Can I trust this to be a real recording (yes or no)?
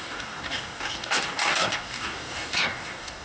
no